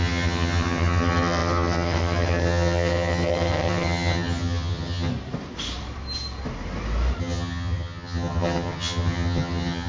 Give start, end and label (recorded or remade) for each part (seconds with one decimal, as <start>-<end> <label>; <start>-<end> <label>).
0.0-5.1 remade; 5.1-7.2 recorded; 7.2-9.9 remade